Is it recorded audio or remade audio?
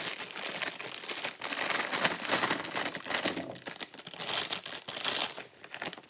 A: recorded